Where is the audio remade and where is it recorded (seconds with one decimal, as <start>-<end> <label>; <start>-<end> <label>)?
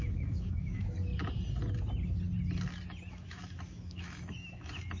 0.0-1.1 remade; 1.1-3.1 recorded; 3.1-5.0 remade